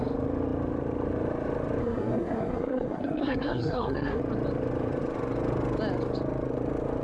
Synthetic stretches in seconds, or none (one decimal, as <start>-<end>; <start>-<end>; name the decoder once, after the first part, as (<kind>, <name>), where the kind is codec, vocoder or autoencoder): 1.8-4.2 (codec, SNAC)